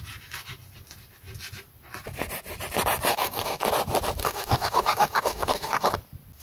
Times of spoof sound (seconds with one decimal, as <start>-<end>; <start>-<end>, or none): 3.1-3.6; 4.2-5.9

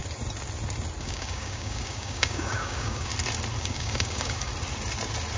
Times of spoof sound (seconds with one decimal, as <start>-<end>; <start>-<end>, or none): 1.0-3.1; 3.6-4.5

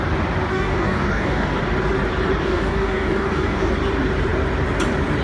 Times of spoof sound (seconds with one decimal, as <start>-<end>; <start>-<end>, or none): 0.5-1.6; 2.4-3.7

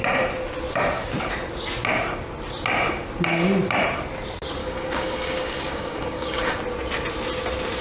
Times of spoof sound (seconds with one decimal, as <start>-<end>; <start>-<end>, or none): 4.6-6.6